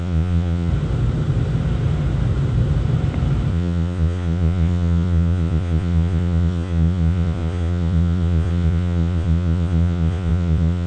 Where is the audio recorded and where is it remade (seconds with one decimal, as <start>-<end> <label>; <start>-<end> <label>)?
0.0-0.7 remade; 0.7-3.5 recorded; 3.5-10.9 remade